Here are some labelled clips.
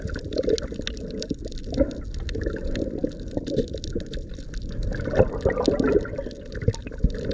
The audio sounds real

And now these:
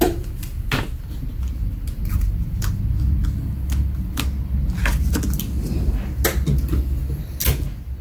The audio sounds real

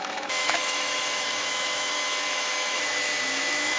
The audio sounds fake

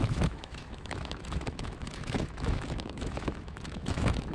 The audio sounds fake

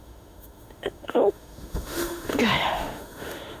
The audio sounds fake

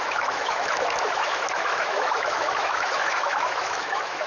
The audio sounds fake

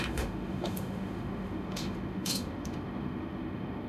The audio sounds fake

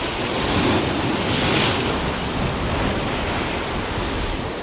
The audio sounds real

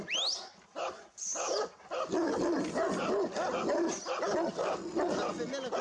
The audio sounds real